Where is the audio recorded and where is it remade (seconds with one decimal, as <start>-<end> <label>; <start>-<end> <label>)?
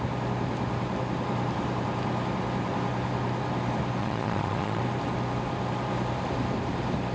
0.0-4.0 recorded; 4.0-4.8 remade; 4.8-7.1 recorded